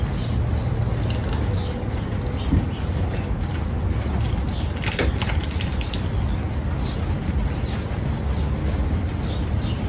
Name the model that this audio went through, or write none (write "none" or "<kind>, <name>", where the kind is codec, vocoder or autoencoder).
none